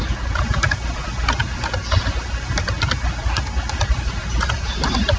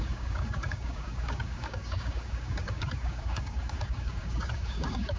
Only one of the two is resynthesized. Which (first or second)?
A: second